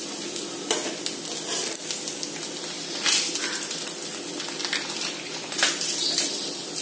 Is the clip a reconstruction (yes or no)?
no